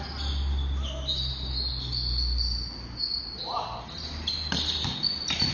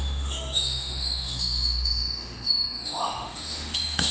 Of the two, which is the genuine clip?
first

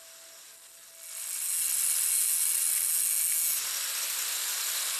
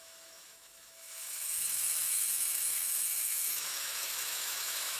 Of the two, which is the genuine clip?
first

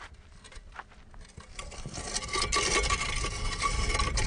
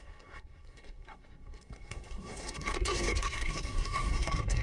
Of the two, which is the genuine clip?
first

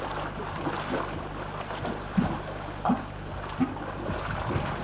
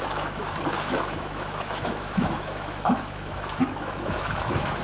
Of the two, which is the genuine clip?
first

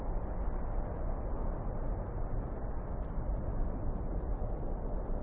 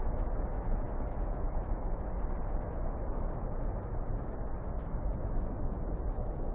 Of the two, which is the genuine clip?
first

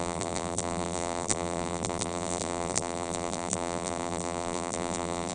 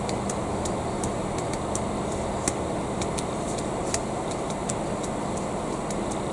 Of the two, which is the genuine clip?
second